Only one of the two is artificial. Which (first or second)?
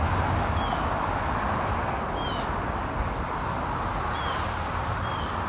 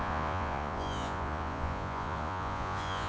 second